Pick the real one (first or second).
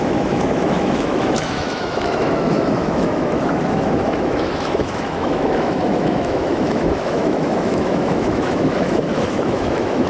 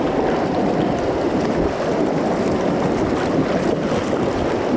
second